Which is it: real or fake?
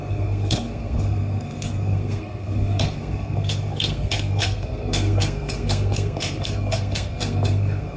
fake